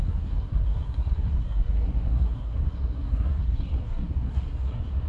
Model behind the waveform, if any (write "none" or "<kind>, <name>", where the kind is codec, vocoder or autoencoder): codec, SNAC